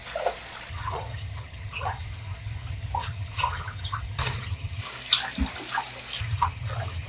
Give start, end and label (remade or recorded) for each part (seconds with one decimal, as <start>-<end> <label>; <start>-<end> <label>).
0.0-0.7 recorded; 0.7-4.8 remade; 4.8-6.2 recorded; 6.2-7.1 remade